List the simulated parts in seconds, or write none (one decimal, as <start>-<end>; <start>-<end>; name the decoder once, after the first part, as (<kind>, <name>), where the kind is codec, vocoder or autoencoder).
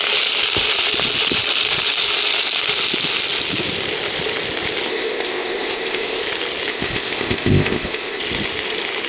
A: 4.9-6.2 (codec, ZipCodec); 6.7-8.2